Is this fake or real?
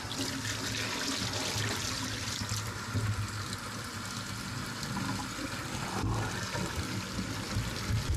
real